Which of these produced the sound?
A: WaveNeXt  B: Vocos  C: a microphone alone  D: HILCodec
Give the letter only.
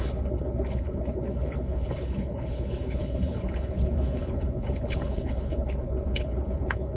D